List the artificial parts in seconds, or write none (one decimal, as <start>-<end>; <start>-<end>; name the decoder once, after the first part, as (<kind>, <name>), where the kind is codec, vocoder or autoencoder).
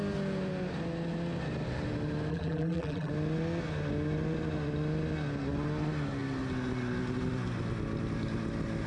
2.3-3.1 (vocoder, BigVGAN v2)